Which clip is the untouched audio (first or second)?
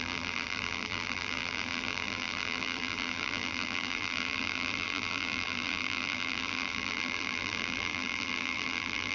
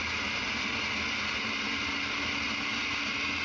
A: second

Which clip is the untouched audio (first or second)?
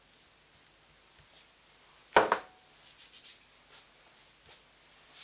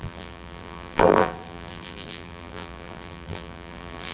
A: first